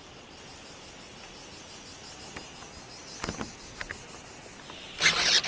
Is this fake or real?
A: real